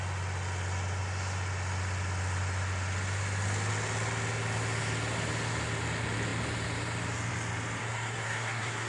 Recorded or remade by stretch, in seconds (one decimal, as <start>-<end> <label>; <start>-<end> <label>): 0.0-7.8 recorded; 7.8-8.9 remade